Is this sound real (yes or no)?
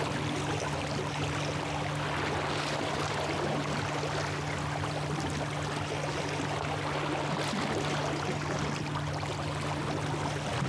yes